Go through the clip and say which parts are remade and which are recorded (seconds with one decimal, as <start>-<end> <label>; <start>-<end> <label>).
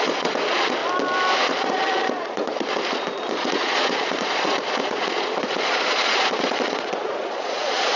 0.0-0.8 remade; 0.8-1.4 recorded; 1.4-8.0 remade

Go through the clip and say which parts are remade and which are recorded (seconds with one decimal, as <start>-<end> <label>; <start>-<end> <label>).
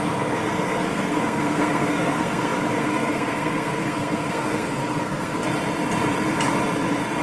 0.0-5.4 remade; 5.4-7.2 recorded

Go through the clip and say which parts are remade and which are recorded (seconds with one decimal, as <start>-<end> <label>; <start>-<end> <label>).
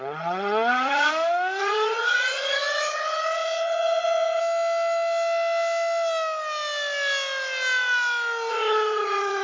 0.0-1.1 remade; 1.1-1.6 recorded; 1.6-4.4 remade; 4.4-8.5 recorded; 8.5-9.4 remade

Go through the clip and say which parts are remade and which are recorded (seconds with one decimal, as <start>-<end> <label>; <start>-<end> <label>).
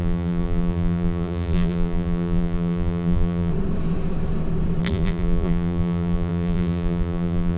0.0-3.5 remade; 3.5-4.8 recorded; 4.8-7.6 remade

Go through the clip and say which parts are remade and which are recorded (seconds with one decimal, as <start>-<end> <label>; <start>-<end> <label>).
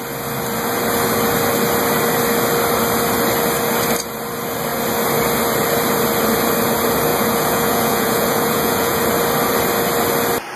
0.0-7.1 recorded; 7.1-9.0 remade; 9.0-10.6 recorded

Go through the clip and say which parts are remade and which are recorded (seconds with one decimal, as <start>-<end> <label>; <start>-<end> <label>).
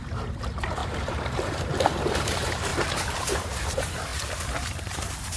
0.0-2.7 remade; 2.7-3.2 recorded; 3.2-4.1 remade; 4.1-4.6 recorded; 4.6-5.4 remade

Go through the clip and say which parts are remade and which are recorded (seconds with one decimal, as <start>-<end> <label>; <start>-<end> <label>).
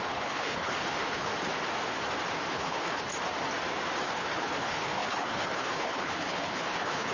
0.0-1.3 remade; 1.3-2.5 recorded; 2.5-3.1 remade; 3.1-4.1 recorded; 4.1-7.1 remade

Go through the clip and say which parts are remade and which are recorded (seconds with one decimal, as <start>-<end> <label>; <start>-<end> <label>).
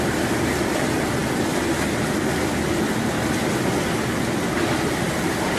0.0-5.6 recorded